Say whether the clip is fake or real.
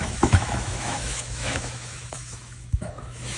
fake